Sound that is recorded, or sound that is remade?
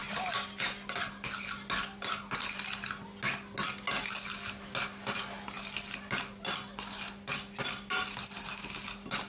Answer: recorded